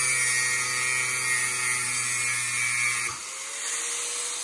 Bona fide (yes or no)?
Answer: yes